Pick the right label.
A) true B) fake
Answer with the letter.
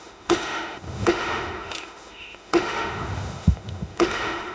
B